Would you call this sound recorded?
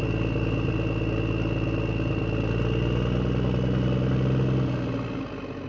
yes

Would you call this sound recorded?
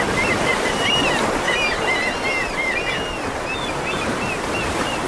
yes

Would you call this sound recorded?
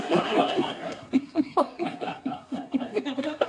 no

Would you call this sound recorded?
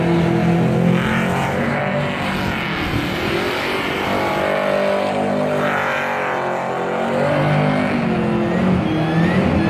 yes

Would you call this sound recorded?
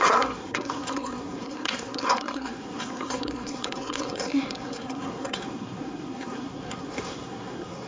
no